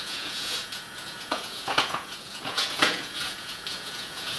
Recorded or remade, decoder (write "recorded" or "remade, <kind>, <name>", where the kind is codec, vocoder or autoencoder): remade, vocoder, Vocos